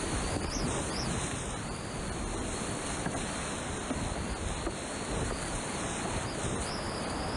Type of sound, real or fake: real